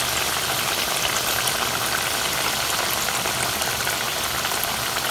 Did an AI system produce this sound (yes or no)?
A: no